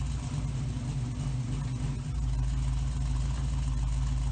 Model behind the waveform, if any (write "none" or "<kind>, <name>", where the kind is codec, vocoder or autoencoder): none